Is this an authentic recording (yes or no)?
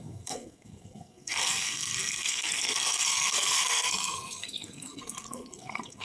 no